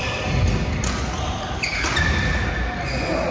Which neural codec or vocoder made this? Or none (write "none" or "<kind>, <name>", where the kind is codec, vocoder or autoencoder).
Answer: none